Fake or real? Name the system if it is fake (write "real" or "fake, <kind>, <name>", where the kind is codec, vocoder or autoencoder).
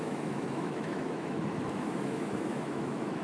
fake, autoencoder, DAC-VAE